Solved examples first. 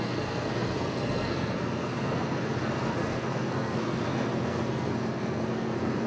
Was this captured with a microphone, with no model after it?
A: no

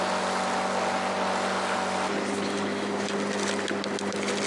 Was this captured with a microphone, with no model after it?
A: yes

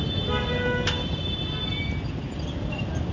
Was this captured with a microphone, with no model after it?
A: yes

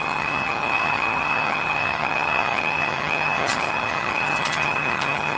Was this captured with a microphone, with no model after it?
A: no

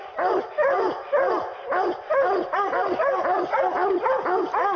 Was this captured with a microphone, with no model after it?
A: yes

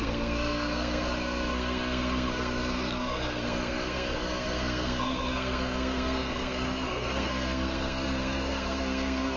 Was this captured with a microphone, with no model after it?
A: no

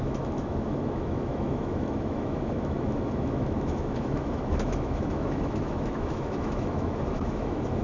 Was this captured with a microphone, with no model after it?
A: no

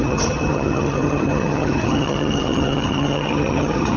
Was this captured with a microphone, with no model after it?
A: no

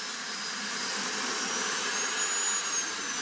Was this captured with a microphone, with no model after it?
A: yes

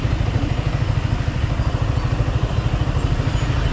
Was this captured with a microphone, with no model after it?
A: yes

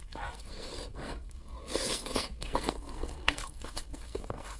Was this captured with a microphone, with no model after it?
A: no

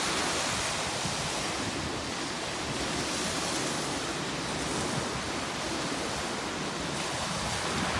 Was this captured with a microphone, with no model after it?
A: yes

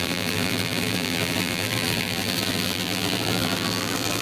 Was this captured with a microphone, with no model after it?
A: no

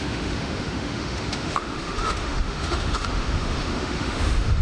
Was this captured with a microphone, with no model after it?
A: no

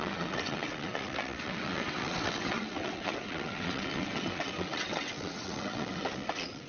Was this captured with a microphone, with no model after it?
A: no